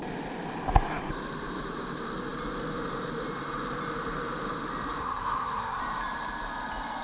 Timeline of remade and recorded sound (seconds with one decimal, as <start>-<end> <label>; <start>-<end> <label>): 0.0-5.0 recorded; 5.0-5.8 remade; 5.8-7.0 recorded